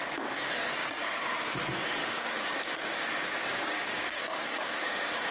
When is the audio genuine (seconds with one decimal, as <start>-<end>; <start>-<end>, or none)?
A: 0.0-0.8; 1.6-2.0